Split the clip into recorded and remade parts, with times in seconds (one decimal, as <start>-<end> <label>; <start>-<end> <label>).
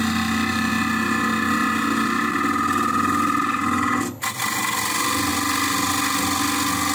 0.0-6.9 recorded